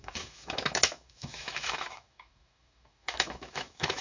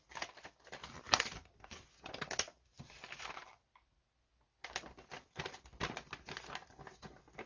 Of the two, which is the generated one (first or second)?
first